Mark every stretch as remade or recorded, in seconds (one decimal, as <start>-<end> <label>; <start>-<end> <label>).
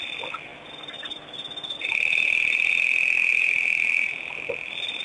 0.0-0.5 recorded; 0.5-2.7 remade; 2.7-3.3 recorded; 3.3-5.0 remade